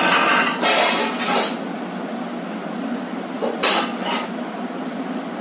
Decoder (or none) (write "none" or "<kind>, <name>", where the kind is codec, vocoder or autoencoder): none